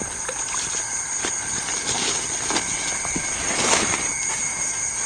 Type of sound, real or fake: real